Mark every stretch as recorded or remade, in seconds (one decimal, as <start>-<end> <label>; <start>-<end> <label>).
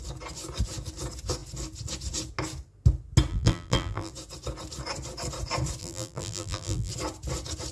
0.0-3.3 recorded; 3.3-4.1 remade; 4.1-5.8 recorded; 5.8-6.9 remade; 6.9-7.7 recorded